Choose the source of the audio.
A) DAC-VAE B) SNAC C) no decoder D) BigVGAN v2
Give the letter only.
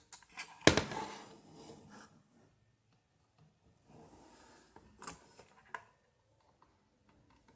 C